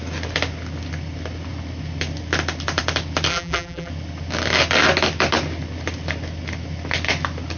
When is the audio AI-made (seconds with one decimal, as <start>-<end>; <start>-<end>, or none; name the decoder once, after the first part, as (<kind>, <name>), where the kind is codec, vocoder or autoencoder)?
3.3-3.9 (vocoder, BigVGAN v2)